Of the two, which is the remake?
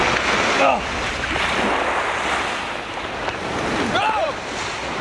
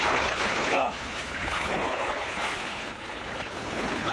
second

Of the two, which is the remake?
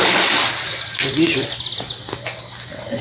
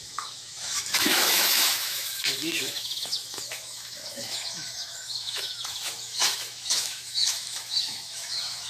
second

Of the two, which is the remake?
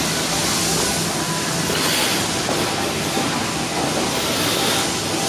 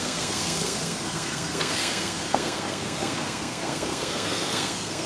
second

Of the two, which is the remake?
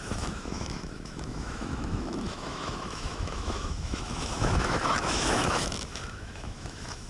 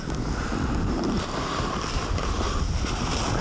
first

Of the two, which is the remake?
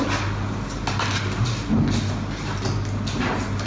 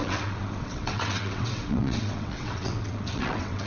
second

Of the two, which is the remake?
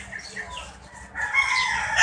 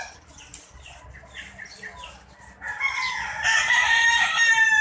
second